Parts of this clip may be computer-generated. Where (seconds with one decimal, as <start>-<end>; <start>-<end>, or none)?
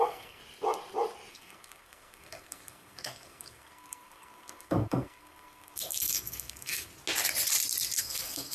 0.0-0.4; 1.3-6.9; 8.0-8.5